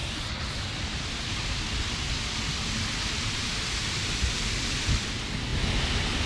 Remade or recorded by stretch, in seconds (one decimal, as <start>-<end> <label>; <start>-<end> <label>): 0.0-6.3 recorded